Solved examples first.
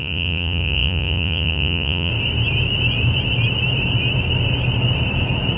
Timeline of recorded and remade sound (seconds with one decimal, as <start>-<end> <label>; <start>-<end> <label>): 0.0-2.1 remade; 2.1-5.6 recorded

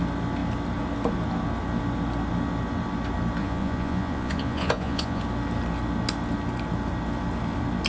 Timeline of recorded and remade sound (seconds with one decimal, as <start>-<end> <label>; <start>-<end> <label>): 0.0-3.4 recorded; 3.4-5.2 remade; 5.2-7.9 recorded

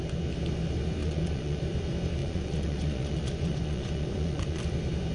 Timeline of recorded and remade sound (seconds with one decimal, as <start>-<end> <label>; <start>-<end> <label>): 0.0-1.0 recorded; 1.0-1.6 remade; 1.6-2.2 recorded; 2.2-4.6 remade; 4.6-5.1 recorded